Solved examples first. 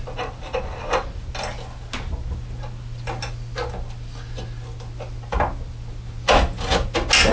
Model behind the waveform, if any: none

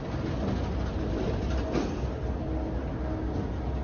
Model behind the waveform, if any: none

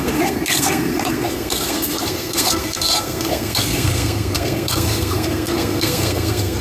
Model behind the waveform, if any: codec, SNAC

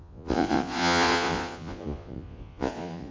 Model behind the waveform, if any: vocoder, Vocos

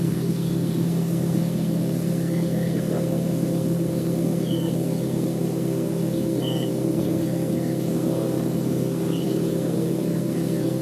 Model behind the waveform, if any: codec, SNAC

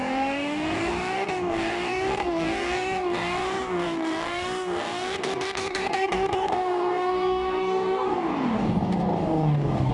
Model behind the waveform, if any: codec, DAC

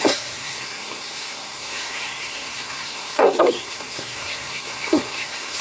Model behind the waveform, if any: codec, SNAC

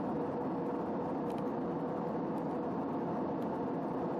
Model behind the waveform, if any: none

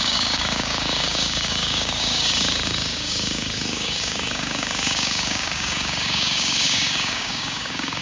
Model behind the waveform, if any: codec, DAC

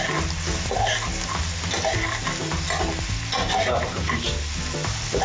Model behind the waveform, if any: none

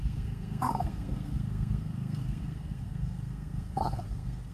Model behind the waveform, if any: codec, SNAC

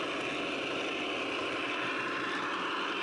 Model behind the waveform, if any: vocoder, BigVGAN v2